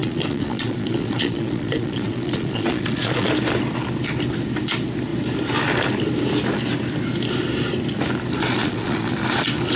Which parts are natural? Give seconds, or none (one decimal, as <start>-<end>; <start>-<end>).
3.3-8.4; 9.1-9.8